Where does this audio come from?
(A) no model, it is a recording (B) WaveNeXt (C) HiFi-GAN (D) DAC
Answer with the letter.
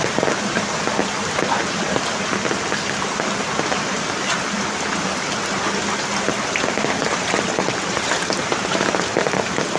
A